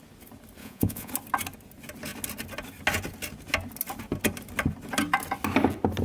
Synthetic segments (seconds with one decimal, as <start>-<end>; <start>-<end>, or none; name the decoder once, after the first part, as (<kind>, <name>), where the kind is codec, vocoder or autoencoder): 0.6-1.1 (vocoder, Vocos)

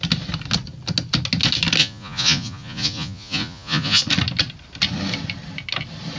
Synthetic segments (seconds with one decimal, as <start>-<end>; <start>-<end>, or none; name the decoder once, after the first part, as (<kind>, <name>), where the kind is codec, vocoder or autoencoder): 1.8-4.0 (vocoder, Vocos)

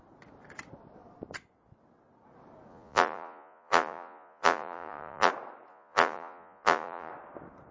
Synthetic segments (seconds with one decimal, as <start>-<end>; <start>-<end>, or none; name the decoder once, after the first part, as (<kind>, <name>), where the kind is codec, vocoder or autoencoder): 2.7-5.3 (vocoder, Vocos); 5.7-7.1

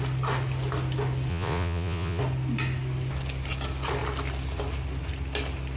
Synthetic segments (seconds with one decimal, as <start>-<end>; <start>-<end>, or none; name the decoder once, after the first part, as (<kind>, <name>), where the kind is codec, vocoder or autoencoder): 1.3-2.2 (vocoder, Vocos)

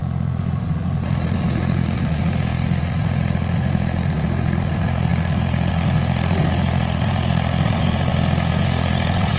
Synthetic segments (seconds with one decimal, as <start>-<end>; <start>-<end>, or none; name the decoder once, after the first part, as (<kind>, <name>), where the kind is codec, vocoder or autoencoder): 0.0-8.1 (vocoder, Vocos); 8.6-9.4

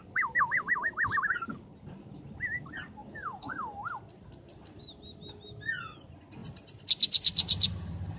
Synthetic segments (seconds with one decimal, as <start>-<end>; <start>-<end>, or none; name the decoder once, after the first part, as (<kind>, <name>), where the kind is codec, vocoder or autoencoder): none